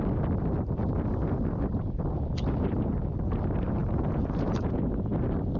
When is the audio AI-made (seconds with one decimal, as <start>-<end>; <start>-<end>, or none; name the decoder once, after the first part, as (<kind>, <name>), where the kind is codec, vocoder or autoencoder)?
3.8-4.8 (vocoder, Vocos)